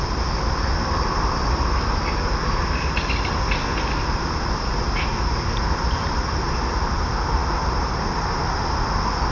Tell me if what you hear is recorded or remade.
recorded